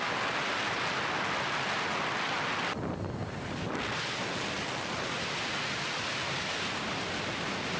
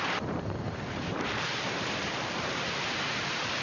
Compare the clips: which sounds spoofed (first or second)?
second